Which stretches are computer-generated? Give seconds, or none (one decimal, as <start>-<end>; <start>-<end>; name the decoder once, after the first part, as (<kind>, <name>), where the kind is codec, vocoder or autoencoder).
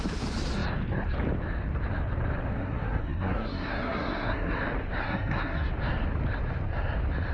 2.5-4.6 (codec, SNAC); 5.0-5.7